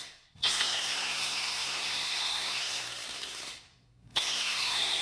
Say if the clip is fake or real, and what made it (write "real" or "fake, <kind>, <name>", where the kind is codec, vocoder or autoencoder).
fake, codec, SNAC